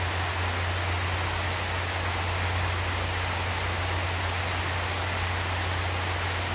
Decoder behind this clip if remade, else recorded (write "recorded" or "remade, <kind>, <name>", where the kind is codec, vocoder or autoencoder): recorded